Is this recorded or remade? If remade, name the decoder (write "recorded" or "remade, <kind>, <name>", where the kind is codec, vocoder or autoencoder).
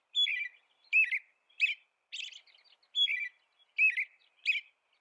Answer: recorded